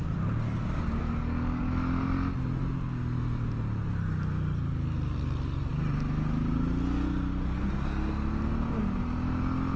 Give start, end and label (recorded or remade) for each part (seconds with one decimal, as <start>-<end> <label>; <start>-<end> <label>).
0.0-1.0 recorded; 1.0-1.6 remade; 1.6-9.8 recorded